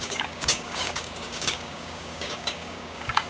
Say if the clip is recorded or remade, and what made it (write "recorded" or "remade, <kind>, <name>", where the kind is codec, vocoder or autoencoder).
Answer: remade, codec, DAC